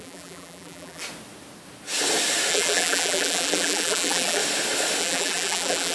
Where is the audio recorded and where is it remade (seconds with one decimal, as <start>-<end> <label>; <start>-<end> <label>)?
0.0-1.0 remade; 1.0-2.5 recorded; 2.5-4.4 remade; 4.4-5.0 recorded; 5.0-5.9 remade